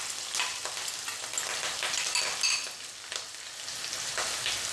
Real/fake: real